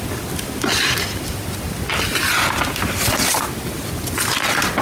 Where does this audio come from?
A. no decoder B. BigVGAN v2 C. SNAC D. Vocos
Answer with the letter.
A